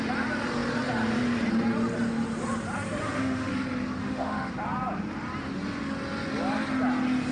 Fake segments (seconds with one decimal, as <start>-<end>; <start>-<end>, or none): 3.0-3.5; 4.0-4.5